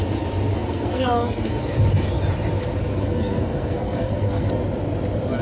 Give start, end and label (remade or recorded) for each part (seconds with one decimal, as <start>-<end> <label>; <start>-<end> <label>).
0.0-0.5 recorded; 0.5-1.6 remade; 1.6-2.9 recorded; 2.9-4.5 remade; 4.5-5.4 recorded